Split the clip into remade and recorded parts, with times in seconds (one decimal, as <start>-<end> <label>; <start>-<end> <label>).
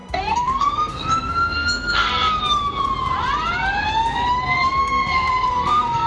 0.0-2.1 remade; 2.1-4.8 recorded; 4.8-6.1 remade